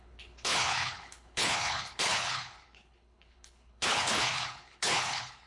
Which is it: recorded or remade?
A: remade